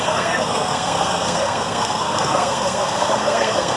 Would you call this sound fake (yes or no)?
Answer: yes